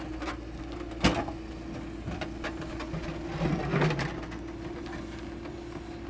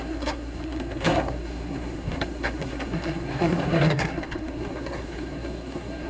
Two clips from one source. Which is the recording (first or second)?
first